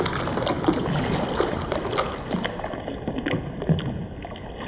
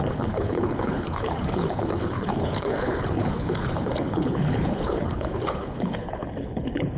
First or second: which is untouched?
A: first